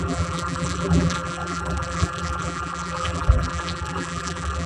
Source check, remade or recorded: remade